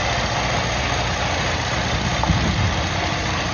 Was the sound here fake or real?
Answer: real